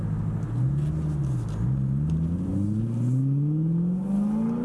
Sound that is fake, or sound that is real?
real